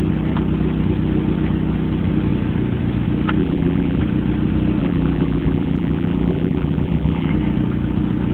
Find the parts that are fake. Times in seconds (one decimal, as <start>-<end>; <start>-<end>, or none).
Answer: 3.4-4.0; 4.8-7.3